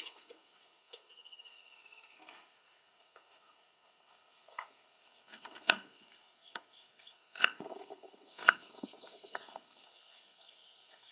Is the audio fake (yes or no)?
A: yes